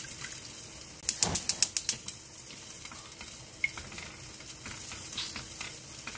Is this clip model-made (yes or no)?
no